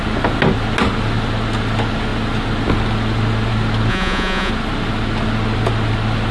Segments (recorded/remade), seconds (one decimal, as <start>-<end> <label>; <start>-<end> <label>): 0.0-3.9 recorded; 3.9-4.5 remade; 4.5-6.3 recorded